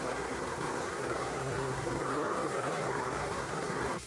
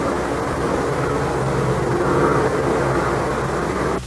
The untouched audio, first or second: second